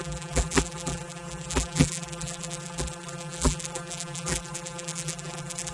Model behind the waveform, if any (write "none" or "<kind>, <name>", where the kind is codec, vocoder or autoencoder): vocoder, BigVGAN v2